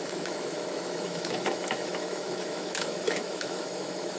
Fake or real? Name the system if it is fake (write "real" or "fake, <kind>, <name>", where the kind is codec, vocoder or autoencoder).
fake, autoencoder, DAC-VAE